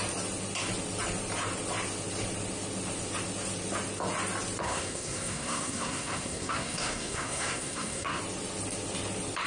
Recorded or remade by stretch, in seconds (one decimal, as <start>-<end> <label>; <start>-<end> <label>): 0.0-4.6 recorded; 4.6-8.2 remade; 8.2-9.5 recorded